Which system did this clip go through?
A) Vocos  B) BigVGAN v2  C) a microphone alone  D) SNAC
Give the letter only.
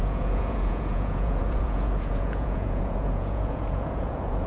A